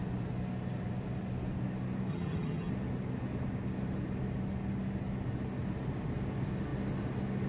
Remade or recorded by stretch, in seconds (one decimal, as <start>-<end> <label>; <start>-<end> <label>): 0.0-2.1 recorded; 2.1-2.7 remade; 2.7-7.5 recorded